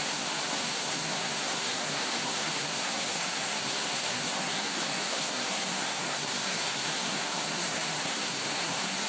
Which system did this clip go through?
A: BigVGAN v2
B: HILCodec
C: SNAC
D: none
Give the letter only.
C